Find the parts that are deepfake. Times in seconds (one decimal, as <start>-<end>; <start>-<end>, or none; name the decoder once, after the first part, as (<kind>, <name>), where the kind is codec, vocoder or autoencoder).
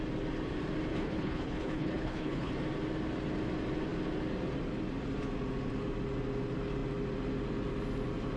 0.9-2.5 (codec, HILCodec)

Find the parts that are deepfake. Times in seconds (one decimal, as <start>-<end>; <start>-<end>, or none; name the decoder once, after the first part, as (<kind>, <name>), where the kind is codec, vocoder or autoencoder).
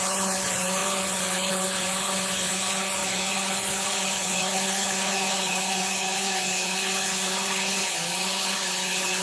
0.0-9.2 (codec, HILCodec)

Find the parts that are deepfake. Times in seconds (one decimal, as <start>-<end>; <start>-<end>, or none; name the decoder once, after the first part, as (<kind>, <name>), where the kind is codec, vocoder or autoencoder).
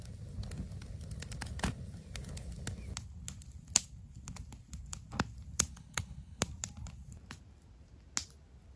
5.7-6.4 (codec, HILCodec)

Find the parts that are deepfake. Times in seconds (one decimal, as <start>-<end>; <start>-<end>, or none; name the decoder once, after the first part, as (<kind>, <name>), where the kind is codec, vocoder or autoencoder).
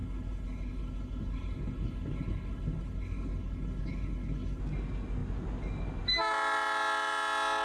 0.0-4.6 (codec, HILCodec)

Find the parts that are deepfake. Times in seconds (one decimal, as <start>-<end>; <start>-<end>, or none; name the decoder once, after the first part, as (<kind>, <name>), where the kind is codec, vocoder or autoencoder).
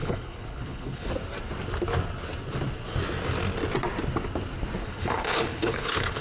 0.0-1.1 (codec, HILCodec); 4.8-6.2